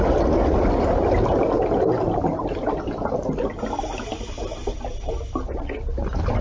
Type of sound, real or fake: real